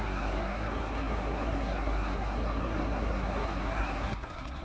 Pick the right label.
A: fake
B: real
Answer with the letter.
A